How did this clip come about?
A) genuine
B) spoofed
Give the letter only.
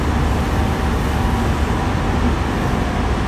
A